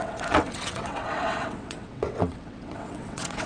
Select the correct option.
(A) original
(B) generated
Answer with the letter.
B